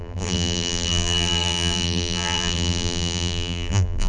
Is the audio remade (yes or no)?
yes